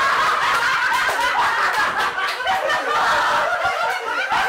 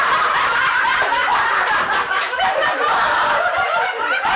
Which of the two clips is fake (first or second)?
second